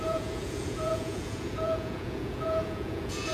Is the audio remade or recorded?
remade